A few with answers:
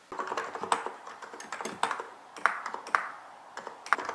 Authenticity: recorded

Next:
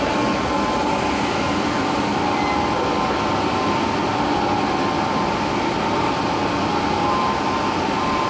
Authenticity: recorded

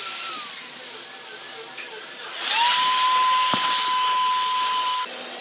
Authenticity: recorded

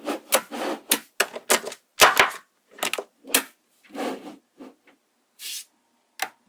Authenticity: recorded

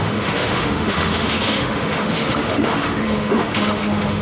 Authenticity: remade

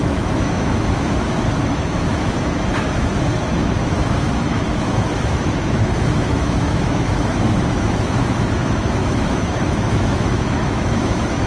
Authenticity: remade